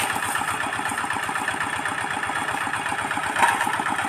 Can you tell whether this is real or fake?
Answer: real